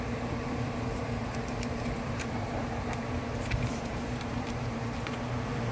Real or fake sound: fake